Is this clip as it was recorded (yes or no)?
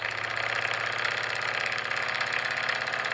yes